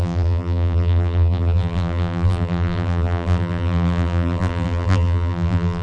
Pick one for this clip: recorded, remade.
remade